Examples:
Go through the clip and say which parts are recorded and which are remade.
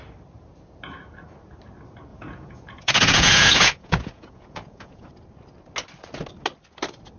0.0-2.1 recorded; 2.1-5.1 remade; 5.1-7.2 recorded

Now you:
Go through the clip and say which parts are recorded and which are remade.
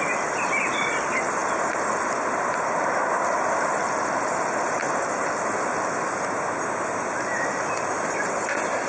0.0-8.9 recorded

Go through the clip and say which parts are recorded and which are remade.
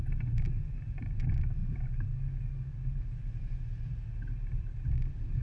0.0-5.4 recorded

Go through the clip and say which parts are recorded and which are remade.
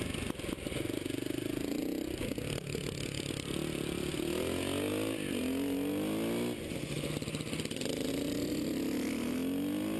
0.0-10.0 recorded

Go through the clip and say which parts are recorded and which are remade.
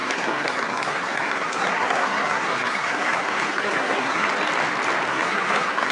0.0-4.3 remade; 4.3-5.1 recorded; 5.1-5.9 remade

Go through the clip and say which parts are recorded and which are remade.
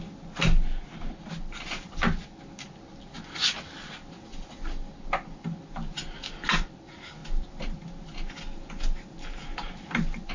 0.0-10.3 recorded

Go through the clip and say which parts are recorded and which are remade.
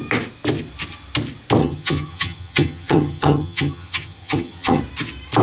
0.0-1.6 recorded; 1.6-4.8 remade; 4.8-5.4 recorded